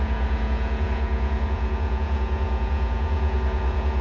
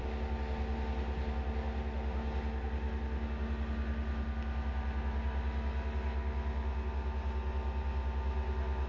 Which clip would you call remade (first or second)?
first